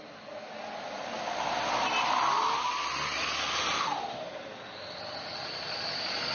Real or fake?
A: real